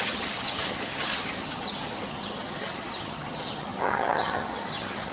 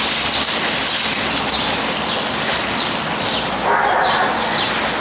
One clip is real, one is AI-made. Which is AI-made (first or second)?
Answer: first